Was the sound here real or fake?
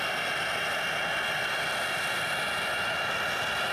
real